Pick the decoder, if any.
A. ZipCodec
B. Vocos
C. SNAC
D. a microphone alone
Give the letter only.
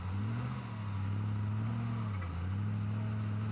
D